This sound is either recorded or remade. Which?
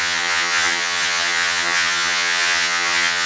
remade